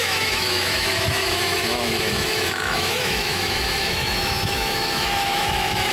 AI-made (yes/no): yes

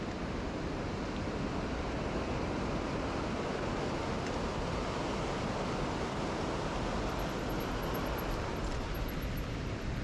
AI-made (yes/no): no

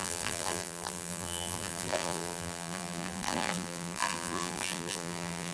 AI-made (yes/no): yes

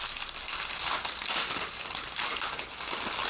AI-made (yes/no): no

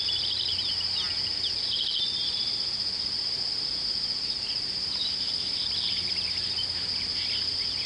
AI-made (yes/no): no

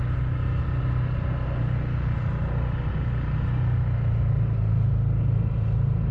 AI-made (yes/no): no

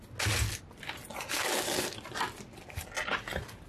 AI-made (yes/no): no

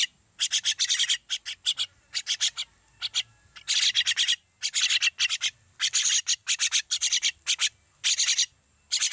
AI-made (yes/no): no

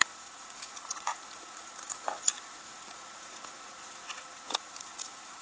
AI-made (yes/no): yes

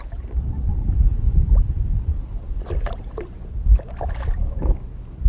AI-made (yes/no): yes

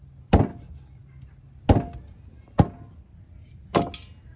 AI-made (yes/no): no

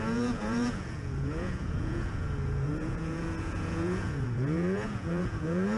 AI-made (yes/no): yes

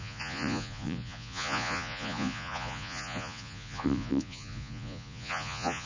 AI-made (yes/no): yes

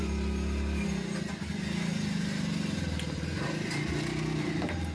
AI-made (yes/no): no